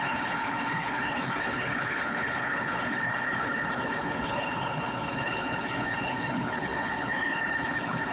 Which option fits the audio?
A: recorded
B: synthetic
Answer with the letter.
B